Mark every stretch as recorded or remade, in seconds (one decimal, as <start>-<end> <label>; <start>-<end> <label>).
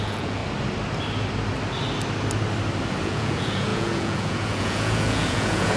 0.0-0.4 remade; 0.4-3.0 recorded; 3.0-5.8 remade